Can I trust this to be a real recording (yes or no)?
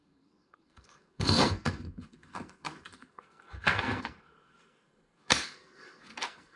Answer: no